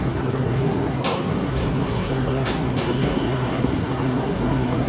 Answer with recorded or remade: remade